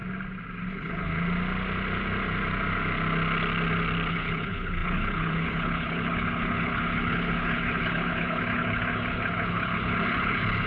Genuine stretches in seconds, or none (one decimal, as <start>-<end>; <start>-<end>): 0.0-0.7; 1.1-4.1